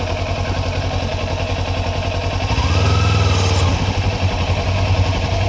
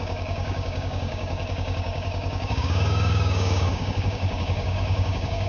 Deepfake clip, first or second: second